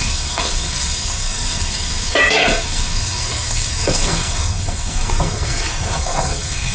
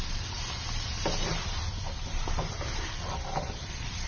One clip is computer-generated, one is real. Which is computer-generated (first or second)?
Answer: first